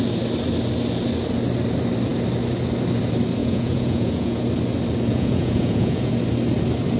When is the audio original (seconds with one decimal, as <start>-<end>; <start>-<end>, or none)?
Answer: 0.0-3.4; 4.4-5.1; 6.1-7.0

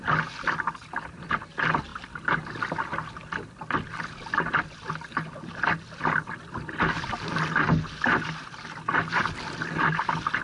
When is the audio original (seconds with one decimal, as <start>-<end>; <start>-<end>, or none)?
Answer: 0.0-10.4

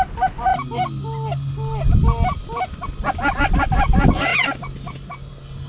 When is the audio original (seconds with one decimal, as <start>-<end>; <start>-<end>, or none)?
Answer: 0.0-5.7

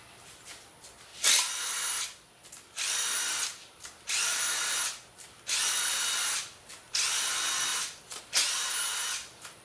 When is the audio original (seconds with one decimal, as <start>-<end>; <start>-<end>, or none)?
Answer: 0.0-7.7; 8.2-9.6

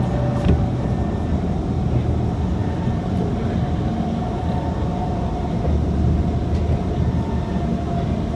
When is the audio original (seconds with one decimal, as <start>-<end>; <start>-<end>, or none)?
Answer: 0.0-8.4

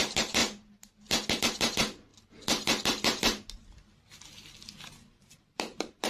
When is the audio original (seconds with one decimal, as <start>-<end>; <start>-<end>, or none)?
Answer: 0.4-1.4; 2.1-5.2